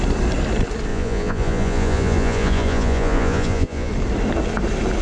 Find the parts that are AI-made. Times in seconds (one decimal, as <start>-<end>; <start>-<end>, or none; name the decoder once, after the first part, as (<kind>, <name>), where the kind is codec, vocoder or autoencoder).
0.9-3.9 (vocoder, Vocos)